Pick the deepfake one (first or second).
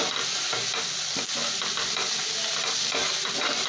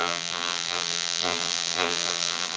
second